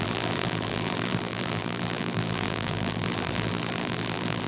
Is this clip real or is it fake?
fake